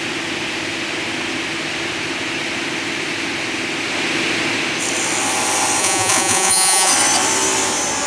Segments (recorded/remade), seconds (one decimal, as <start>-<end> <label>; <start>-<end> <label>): 0.0-5.8 recorded; 5.8-6.9 remade; 6.9-8.1 recorded